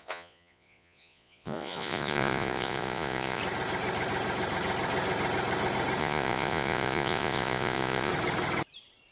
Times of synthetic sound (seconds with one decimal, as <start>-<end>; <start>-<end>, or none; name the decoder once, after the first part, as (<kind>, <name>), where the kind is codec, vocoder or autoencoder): 0.0-3.4 (vocoder, Vocos); 6.0-8.1